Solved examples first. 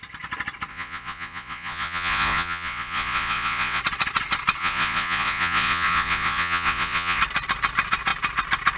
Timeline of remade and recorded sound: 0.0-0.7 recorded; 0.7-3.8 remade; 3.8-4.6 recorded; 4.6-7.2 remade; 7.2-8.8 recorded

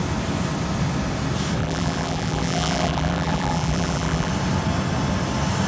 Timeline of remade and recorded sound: 0.0-1.6 recorded; 1.6-4.3 remade; 4.3-5.7 recorded

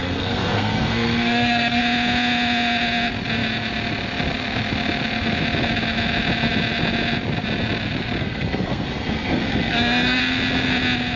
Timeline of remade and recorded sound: 0.0-1.8 remade; 1.8-8.2 recorded; 8.2-10.2 remade; 10.2-11.2 recorded

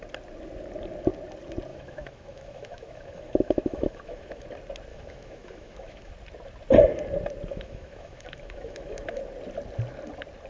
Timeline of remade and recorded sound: 0.0-1.7 recorded; 1.7-4.4 remade; 4.4-4.9 recorded; 4.9-6.1 remade; 6.1-7.5 recorded; 7.5-9.2 remade; 9.2-10.5 recorded

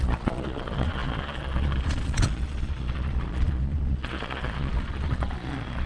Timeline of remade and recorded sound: 0.0-5.9 remade